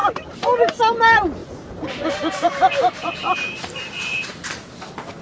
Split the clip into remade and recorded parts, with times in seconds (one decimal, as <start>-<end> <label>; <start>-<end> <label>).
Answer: 0.0-0.8 remade; 0.8-1.4 recorded; 1.4-4.5 remade; 4.5-5.2 recorded